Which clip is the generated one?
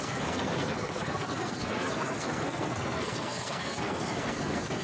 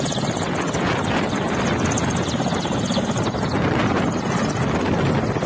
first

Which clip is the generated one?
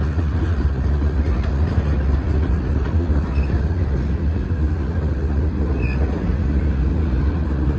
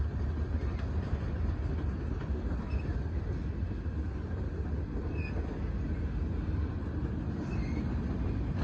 first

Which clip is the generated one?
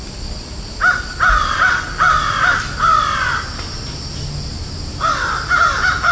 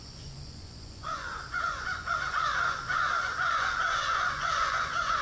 second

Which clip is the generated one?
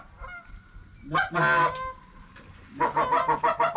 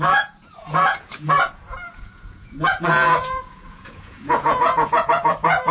second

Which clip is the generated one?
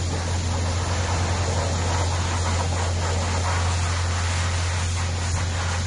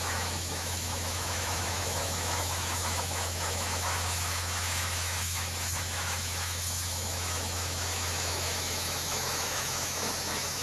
second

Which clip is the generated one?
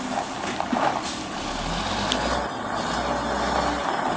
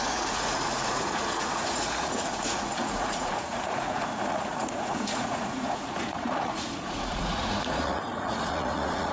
second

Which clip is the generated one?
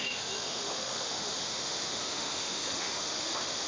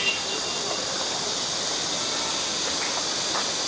first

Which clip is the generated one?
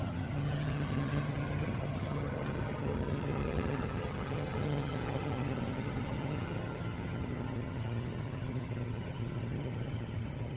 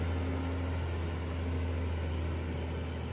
first